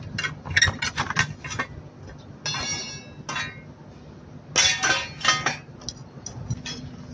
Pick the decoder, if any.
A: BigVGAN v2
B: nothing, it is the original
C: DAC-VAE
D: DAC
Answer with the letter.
B